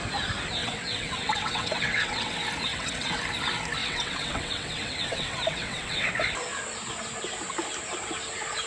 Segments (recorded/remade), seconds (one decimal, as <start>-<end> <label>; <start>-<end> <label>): 0.0-0.6 recorded; 0.6-2.3 remade; 2.3-2.7 recorded; 2.7-3.2 remade; 3.2-3.8 recorded; 3.8-6.1 remade; 6.1-8.7 recorded

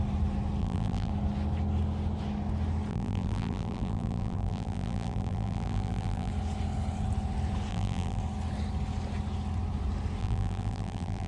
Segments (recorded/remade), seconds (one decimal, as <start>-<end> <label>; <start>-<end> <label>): 0.0-0.6 recorded; 0.6-1.1 remade; 1.1-2.9 recorded; 2.9-6.3 remade; 6.3-7.7 recorded; 7.7-8.2 remade; 8.2-10.2 recorded; 10.2-11.3 remade